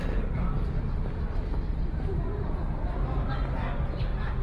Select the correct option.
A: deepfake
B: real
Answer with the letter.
B